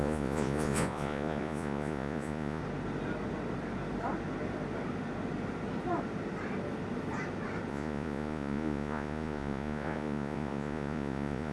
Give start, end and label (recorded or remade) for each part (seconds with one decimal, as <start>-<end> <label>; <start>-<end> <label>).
0.0-2.6 remade; 2.6-7.7 recorded; 7.7-11.5 remade